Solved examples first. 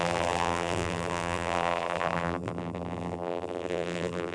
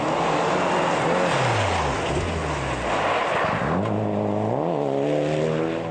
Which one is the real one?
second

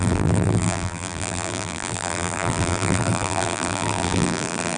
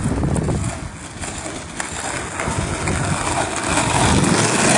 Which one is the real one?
second